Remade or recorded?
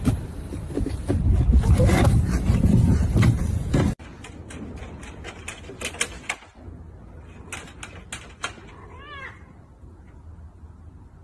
recorded